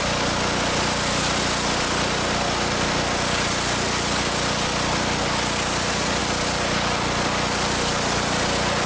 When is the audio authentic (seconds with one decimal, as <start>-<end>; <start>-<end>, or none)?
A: 0.0-8.9